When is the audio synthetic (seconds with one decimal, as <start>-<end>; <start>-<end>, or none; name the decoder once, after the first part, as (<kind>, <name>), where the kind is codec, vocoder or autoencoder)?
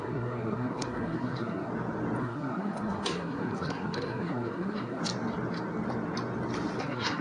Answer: 0.0-1.7 (codec, SNAC); 2.2-5.0; 6.8-7.2